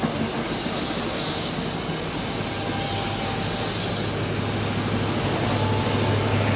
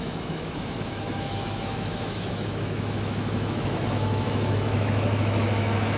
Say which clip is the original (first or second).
first